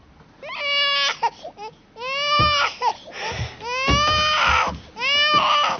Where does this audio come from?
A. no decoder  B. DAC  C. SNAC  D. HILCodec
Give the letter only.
A